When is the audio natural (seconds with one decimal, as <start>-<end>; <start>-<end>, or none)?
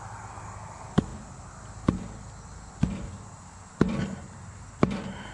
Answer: 0.0-5.3